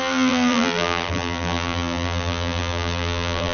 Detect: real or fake fake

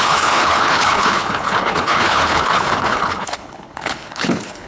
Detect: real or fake fake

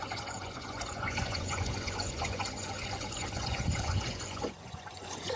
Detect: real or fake fake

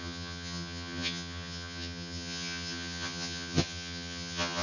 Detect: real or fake fake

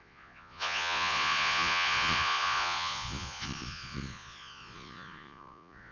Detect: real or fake fake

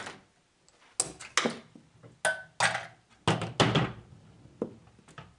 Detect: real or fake real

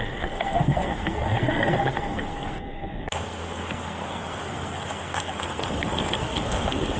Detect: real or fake fake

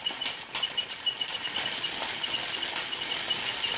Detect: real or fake real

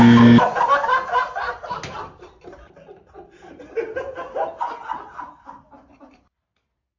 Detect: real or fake real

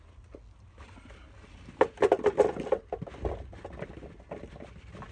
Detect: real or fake real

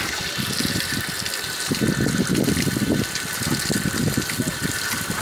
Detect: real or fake real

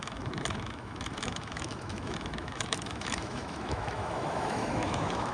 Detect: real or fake fake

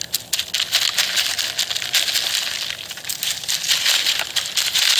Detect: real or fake real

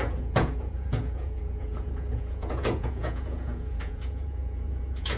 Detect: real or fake fake